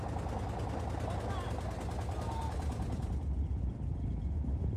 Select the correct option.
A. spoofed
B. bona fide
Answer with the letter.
B